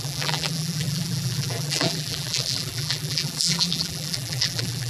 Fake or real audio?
fake